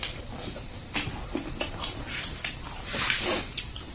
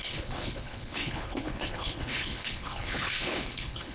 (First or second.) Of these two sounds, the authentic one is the first